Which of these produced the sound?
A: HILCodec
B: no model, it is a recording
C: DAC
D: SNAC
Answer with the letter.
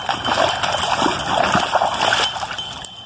B